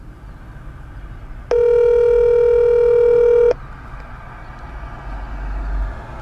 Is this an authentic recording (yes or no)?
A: yes